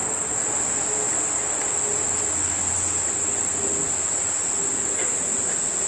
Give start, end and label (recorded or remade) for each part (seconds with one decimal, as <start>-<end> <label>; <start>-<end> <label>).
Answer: 0.0-5.9 recorded

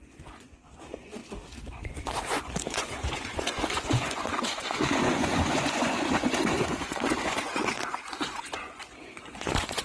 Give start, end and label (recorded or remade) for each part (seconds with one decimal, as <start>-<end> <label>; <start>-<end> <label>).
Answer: 0.0-1.2 remade; 1.2-1.7 recorded; 1.7-9.8 remade

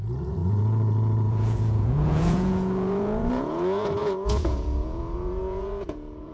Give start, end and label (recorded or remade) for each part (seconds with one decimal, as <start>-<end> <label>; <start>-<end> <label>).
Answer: 0.0-6.3 remade

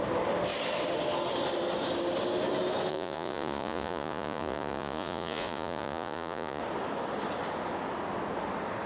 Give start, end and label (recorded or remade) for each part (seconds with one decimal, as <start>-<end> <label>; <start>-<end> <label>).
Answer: 0.0-2.9 recorded; 2.9-6.6 remade; 6.6-8.9 recorded

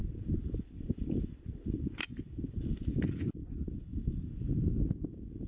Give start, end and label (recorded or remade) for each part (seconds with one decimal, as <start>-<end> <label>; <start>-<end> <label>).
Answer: 0.0-5.5 recorded

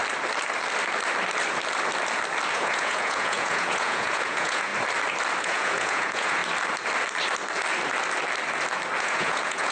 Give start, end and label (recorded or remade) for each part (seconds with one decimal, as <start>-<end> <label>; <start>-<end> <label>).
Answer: 0.0-2.5 recorded; 2.5-4.7 remade; 4.7-5.4 recorded; 5.4-6.4 remade; 6.4-9.0 recorded; 9.0-9.7 remade

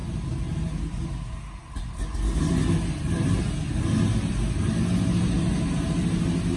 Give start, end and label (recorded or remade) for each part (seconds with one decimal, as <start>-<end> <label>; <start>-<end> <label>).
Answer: 0.0-6.6 recorded

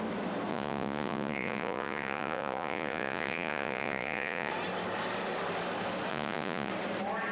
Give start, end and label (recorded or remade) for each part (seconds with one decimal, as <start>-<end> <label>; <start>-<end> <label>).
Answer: 0.0-0.5 recorded; 0.5-4.5 remade; 4.5-6.1 recorded; 6.1-6.7 remade; 6.7-7.3 recorded